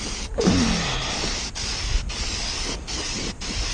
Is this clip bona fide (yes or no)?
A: yes